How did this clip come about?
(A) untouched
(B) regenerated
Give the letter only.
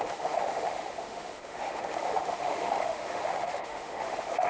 B